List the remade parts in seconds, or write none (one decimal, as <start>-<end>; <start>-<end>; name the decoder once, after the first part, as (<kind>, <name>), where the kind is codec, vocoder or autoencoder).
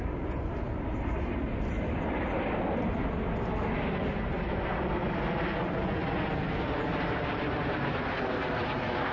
none